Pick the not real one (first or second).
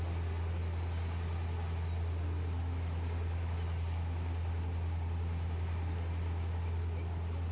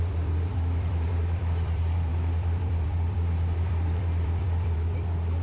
second